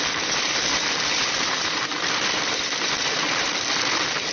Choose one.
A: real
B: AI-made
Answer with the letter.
A